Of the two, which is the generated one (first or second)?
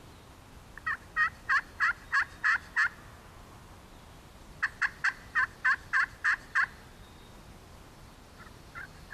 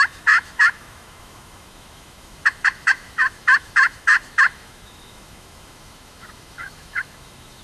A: second